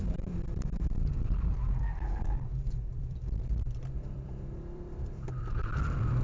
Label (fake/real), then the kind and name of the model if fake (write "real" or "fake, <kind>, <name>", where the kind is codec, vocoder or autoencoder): fake, vocoder, BigVGAN v2